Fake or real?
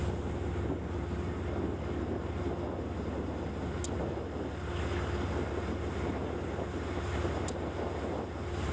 real